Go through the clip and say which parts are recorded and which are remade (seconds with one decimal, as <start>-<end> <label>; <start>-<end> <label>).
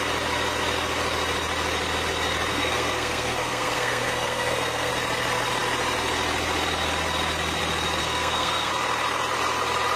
0.0-2.5 recorded; 2.5-4.9 remade; 4.9-8.0 recorded; 8.0-8.7 remade; 8.7-10.0 recorded